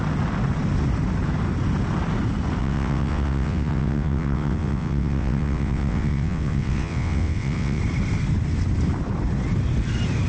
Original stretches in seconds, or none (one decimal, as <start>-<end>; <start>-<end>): 0.0-2.6; 7.8-10.3